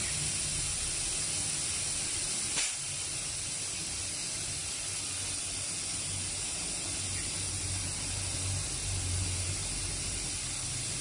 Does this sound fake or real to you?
real